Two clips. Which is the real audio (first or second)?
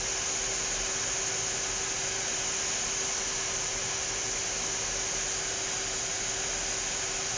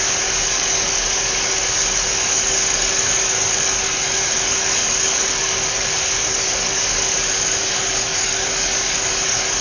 first